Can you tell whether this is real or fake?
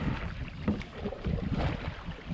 real